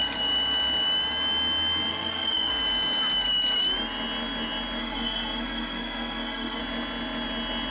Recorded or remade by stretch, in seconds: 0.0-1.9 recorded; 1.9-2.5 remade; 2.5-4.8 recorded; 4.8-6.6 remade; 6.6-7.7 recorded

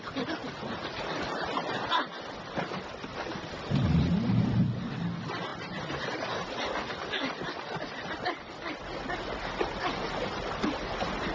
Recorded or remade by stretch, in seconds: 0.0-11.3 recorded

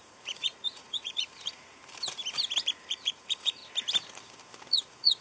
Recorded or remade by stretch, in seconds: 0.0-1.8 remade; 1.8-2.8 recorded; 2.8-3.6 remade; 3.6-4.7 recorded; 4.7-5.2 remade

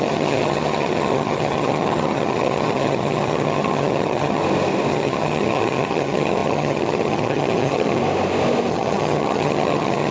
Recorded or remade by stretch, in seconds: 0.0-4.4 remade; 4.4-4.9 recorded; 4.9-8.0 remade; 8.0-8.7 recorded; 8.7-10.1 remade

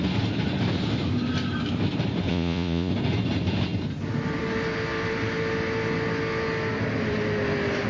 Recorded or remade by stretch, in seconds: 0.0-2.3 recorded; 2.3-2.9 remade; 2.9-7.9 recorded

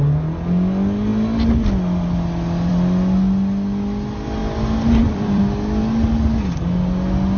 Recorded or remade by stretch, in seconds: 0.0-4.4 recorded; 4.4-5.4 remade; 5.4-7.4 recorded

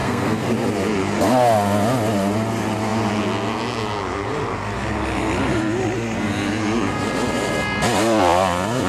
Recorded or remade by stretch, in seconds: 0.0-0.5 remade; 0.5-8.9 recorded